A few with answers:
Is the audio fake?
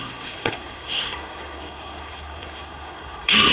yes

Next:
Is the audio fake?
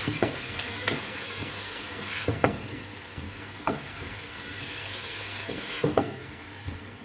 yes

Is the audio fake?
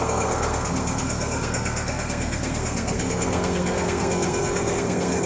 yes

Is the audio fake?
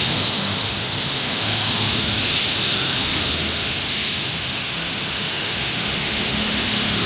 yes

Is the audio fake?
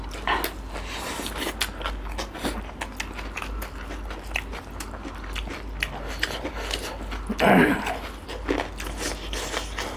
no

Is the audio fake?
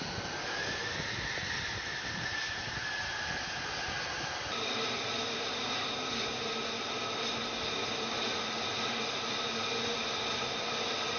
no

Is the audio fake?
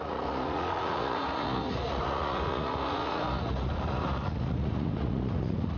yes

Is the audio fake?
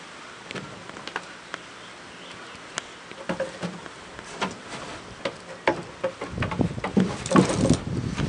no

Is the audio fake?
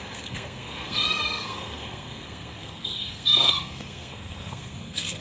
yes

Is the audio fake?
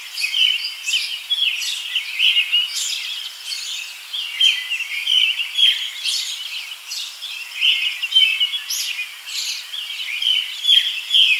no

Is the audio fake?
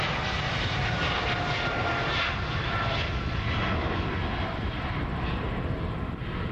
no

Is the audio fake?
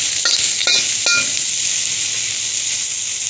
no